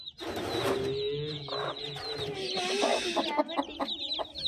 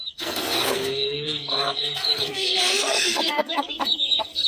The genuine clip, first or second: first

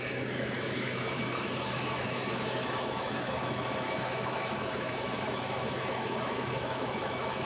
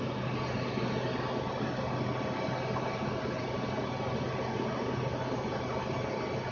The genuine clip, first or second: second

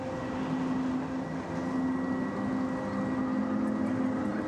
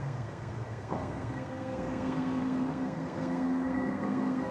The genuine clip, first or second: first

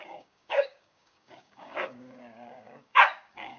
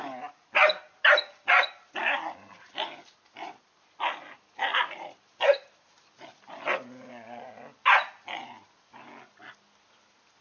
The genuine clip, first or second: second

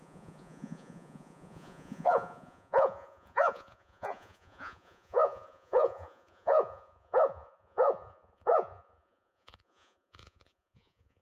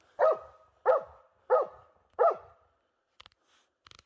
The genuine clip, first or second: second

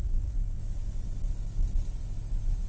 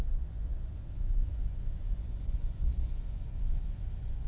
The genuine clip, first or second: first